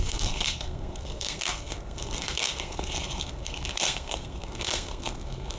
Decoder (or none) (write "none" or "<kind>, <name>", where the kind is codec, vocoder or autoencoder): codec, SNAC